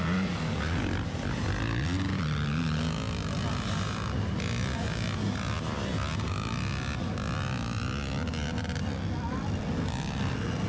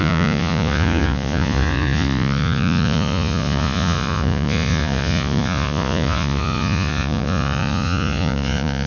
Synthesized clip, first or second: second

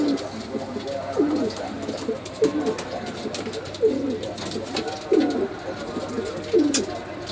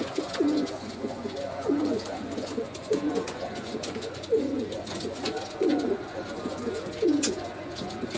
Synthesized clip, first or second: second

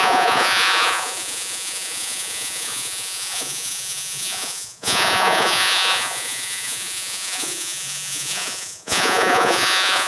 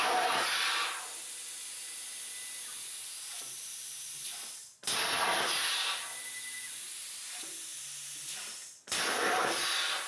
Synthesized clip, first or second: first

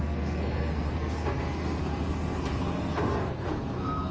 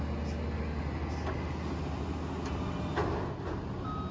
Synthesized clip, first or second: first